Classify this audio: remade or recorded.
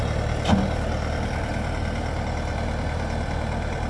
recorded